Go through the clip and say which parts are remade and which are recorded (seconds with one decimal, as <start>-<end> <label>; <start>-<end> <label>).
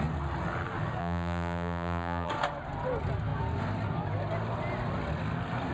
0.0-1.0 recorded; 1.0-2.3 remade; 2.3-5.7 recorded